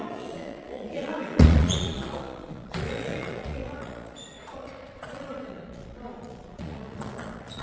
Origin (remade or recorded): remade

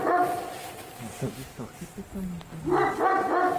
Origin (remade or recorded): recorded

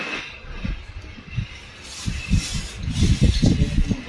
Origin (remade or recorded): recorded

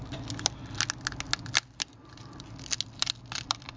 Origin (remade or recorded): recorded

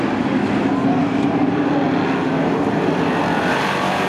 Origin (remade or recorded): recorded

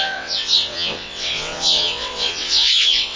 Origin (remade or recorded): remade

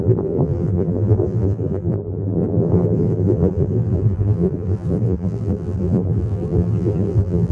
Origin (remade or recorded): remade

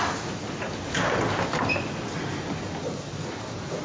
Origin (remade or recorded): recorded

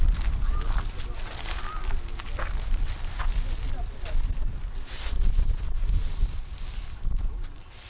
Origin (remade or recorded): recorded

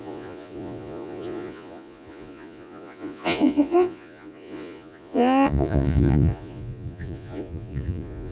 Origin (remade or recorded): remade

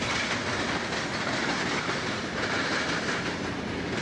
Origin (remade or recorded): recorded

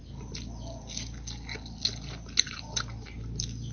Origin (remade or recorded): recorded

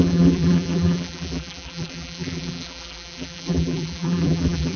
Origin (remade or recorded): remade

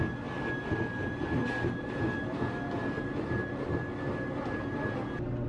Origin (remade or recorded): recorded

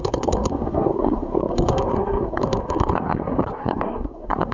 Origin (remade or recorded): remade